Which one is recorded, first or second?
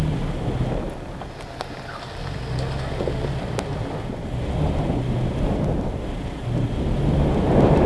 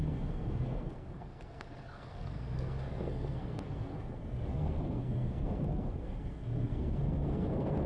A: first